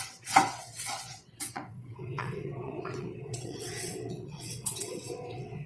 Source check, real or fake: fake